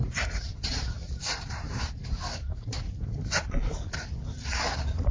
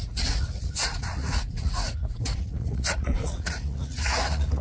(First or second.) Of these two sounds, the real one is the first